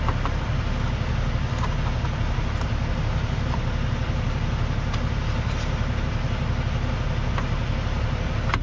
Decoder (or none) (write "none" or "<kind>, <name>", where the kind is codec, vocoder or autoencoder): none